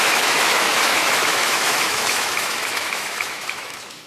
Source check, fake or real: fake